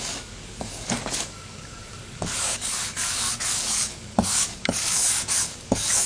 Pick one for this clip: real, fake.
fake